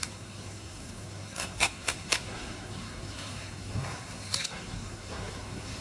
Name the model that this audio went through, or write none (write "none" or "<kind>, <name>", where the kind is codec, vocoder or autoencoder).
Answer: codec, SNAC